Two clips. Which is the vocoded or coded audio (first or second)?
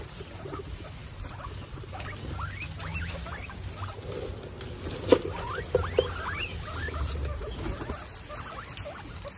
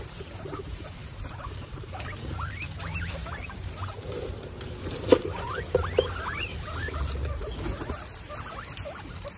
second